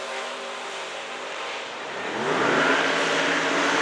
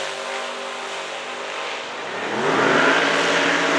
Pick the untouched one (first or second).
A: second